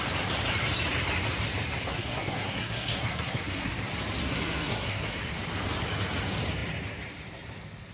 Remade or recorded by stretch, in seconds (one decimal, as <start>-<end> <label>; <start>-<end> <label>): 0.0-1.9 recorded; 1.9-3.7 remade; 3.7-4.2 recorded; 4.2-5.2 remade; 5.2-7.9 recorded